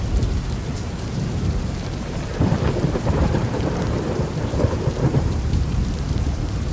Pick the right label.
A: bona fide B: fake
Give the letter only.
B